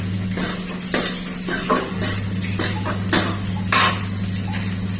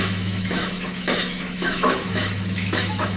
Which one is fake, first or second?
second